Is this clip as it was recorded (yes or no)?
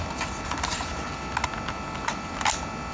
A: yes